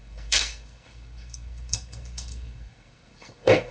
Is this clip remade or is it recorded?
remade